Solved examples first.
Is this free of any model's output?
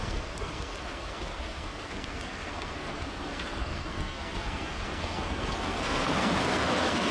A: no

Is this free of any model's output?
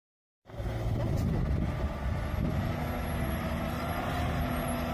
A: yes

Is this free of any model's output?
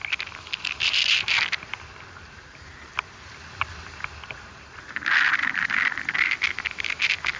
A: yes